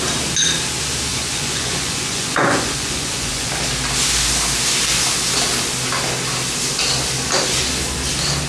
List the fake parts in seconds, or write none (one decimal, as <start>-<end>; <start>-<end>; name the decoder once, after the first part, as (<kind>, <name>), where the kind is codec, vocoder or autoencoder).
1.1-3.5 (vocoder, Vocos)